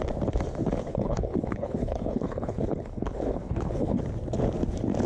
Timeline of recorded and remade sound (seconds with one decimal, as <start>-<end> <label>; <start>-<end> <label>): 0.0-0.9 recorded; 0.9-4.0 remade; 4.0-5.1 recorded